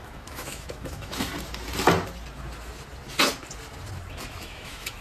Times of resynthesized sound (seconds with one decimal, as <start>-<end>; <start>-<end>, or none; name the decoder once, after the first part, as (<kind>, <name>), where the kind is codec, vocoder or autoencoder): 0.0-1.3 (autoencoder, DAC-VAE); 4.3-5.0